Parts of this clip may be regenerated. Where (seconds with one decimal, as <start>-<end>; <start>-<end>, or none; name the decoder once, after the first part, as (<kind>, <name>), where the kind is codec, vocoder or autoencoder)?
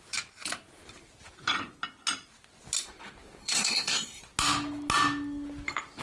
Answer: 3.4-4.2 (codec, SNAC)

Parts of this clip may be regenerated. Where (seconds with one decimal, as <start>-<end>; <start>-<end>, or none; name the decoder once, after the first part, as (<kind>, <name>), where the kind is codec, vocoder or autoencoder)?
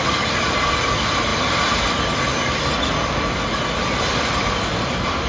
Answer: none